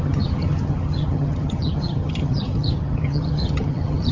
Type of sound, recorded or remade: remade